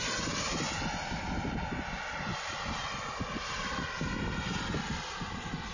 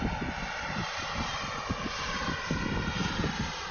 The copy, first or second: second